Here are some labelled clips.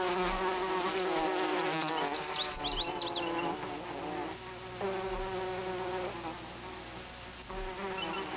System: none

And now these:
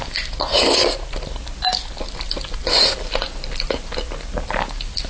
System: none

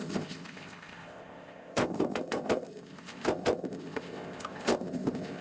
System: codec, ZipCodec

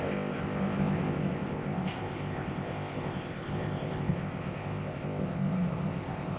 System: codec, ZipCodec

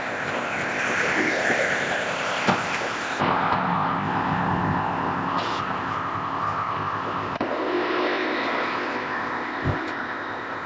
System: codec, ZipCodec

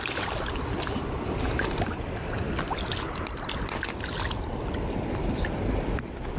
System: none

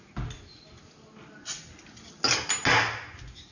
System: none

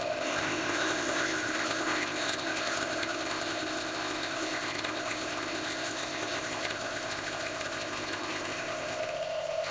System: codec, ZipCodec